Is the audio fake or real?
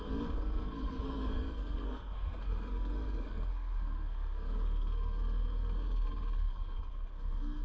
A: fake